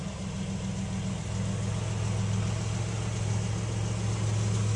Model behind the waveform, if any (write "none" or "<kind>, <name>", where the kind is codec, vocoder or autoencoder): none